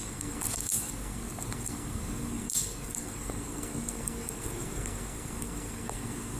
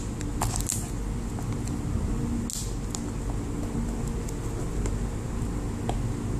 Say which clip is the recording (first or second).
second